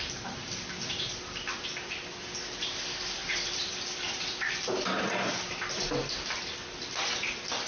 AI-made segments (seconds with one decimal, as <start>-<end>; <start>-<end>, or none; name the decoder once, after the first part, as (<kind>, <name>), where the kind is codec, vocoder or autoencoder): 3.2-4.5 (vocoder, BigVGAN v2)